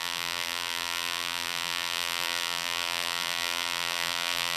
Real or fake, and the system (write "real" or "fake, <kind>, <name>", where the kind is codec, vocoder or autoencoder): fake, vocoder, BigVGAN v2